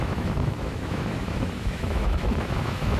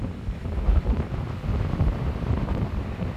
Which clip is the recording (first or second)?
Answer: second